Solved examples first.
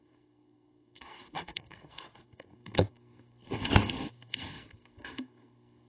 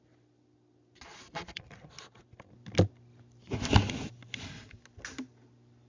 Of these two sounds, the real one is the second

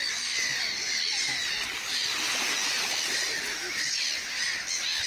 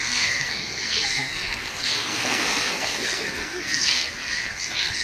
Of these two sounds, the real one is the first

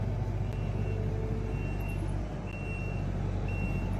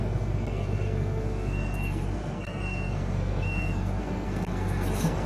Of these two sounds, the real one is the first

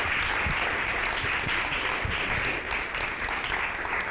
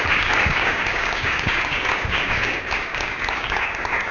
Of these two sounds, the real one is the first